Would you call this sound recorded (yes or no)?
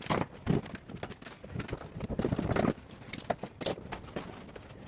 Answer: yes